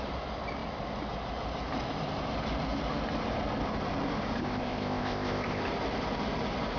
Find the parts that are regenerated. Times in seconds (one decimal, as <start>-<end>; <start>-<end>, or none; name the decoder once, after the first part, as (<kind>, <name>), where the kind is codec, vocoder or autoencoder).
4.4-5.6 (codec, ZipCodec)